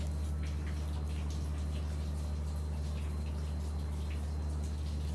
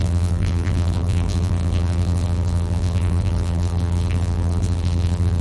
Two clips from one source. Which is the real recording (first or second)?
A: first